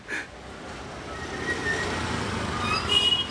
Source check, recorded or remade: recorded